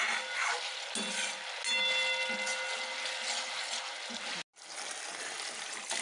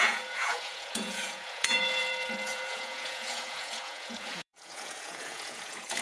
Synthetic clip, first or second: second